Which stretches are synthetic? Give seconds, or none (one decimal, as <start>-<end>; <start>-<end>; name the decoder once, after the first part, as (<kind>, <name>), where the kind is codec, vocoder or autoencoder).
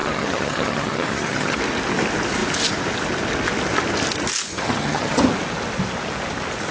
0.0-1.6 (vocoder, HiFi-GAN); 4.5-5.2